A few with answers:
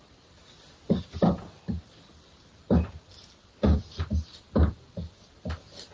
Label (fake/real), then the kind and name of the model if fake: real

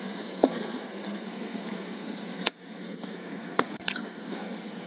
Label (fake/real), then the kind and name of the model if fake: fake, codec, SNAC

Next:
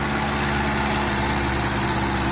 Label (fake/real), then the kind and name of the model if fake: real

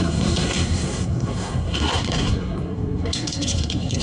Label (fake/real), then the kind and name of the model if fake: fake, codec, SNAC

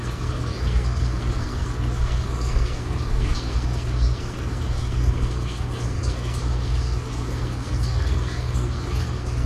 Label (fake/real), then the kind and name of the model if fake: fake, codec, SNAC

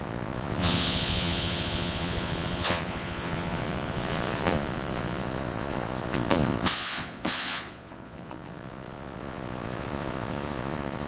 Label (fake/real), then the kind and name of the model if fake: fake, vocoder, Vocos